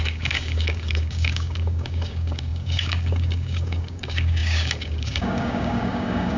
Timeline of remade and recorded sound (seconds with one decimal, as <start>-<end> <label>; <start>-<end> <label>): 0.0-6.4 remade